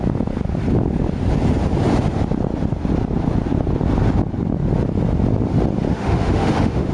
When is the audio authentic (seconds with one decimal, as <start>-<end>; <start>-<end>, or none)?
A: 0.0-5.9